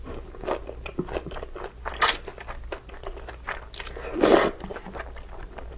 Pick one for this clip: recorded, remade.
recorded